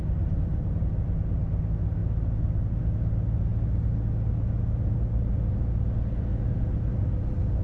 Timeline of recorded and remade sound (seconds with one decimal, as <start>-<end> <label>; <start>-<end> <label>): 0.0-7.6 recorded